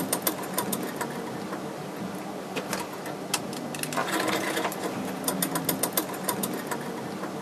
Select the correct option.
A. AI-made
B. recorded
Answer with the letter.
B